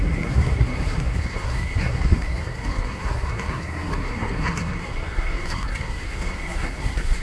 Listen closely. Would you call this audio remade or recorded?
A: remade